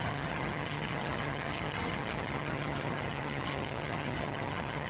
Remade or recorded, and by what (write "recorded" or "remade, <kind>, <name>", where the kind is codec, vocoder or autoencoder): remade, vocoder, HiFi-GAN